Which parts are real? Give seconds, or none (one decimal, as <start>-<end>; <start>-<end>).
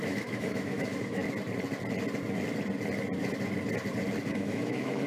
1.2-4.3